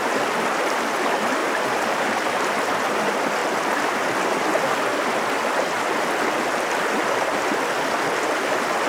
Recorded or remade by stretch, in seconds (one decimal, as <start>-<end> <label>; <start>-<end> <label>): 0.0-1.4 recorded; 1.4-2.1 remade; 2.1-8.9 recorded